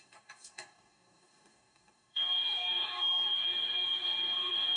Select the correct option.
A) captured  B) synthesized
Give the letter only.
B